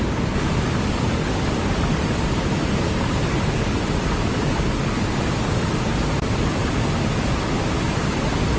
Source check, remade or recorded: recorded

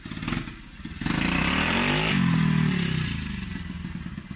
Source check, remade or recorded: recorded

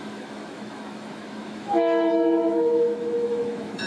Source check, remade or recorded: remade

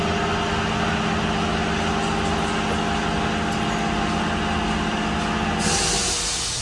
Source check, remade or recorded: recorded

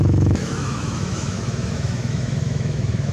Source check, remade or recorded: remade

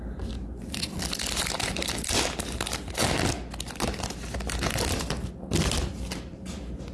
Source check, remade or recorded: recorded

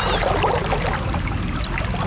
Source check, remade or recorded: recorded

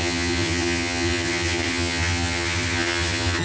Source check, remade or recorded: remade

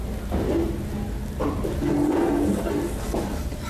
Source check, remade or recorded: recorded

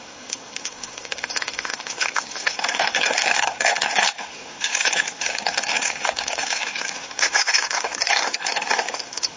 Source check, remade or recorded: remade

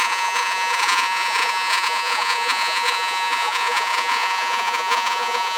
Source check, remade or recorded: remade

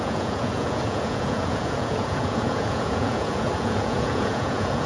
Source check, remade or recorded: remade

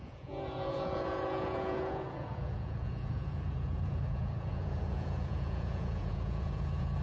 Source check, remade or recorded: remade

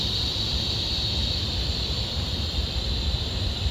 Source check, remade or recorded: remade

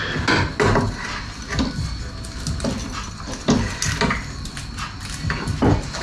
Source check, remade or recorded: recorded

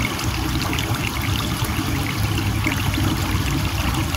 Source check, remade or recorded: recorded